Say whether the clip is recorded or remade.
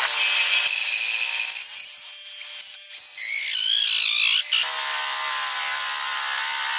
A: recorded